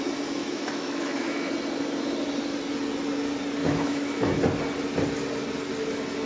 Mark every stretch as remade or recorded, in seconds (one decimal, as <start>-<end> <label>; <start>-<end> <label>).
0.0-0.4 recorded; 0.4-1.5 remade; 1.5-3.6 recorded; 3.6-4.4 remade; 4.4-6.3 recorded